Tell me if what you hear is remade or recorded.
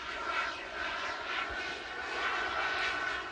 remade